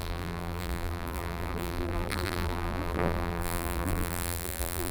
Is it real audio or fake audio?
fake